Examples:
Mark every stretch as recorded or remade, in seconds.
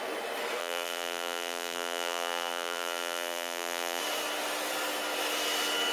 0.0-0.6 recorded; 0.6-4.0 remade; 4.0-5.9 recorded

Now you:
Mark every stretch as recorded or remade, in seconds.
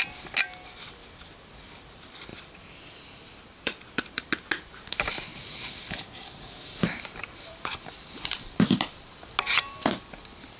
0.0-2.3 recorded; 2.3-4.2 remade; 4.2-5.3 recorded; 5.3-9.3 remade; 9.3-10.6 recorded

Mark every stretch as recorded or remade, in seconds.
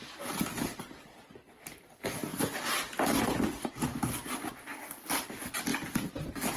0.0-5.7 recorded; 5.7-6.6 remade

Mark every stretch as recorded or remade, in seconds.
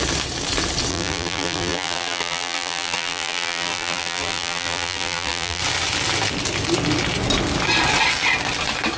0.0-0.9 recorded; 0.9-5.6 remade; 5.6-9.0 recorded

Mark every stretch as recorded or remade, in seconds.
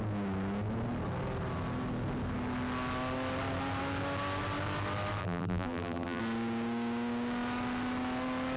0.0-5.2 recorded; 5.2-6.2 remade; 6.2-8.6 recorded